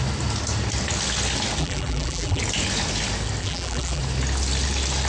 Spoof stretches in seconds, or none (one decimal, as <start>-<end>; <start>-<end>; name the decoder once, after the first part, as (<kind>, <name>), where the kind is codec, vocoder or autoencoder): 1.6-2.4 (vocoder, BigVGAN v2); 3.4-4.0